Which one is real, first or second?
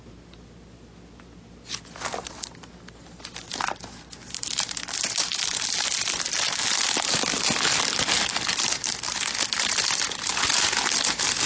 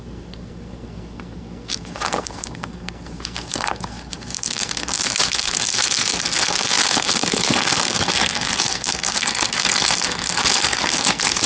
first